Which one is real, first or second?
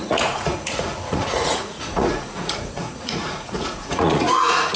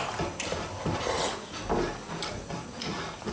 second